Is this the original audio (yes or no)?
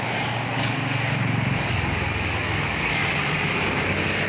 no